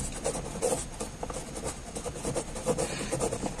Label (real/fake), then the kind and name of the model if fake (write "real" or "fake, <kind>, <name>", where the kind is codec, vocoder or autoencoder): real